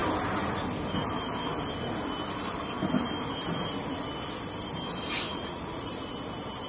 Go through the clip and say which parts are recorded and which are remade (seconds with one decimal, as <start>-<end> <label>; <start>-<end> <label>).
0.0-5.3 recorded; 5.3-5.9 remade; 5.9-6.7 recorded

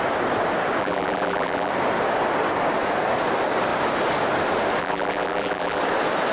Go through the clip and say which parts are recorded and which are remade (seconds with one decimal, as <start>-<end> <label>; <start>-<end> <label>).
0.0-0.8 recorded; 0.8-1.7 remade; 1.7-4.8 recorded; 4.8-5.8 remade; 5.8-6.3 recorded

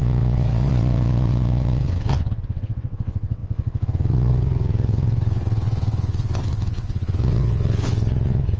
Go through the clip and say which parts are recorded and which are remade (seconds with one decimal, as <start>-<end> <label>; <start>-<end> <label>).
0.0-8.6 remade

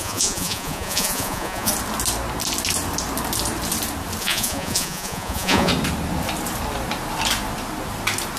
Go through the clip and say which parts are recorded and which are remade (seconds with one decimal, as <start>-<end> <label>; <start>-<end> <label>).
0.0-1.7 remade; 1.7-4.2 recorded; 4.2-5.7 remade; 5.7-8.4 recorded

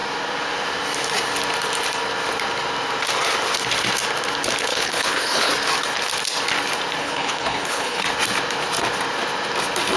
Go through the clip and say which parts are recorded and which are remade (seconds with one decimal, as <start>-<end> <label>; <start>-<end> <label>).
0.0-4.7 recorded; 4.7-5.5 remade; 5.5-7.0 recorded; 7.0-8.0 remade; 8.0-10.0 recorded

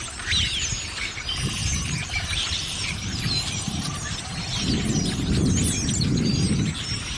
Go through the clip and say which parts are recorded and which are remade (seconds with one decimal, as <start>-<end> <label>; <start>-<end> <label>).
0.0-1.6 recorded; 1.6-4.2 remade; 4.2-7.2 recorded